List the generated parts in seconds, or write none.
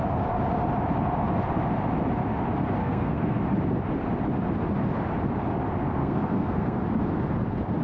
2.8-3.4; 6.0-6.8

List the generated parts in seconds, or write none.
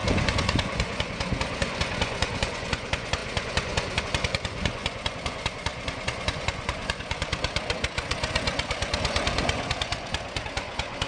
0.0-11.1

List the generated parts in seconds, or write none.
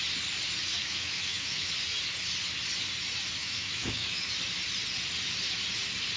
0.8-1.7; 3.4-4.3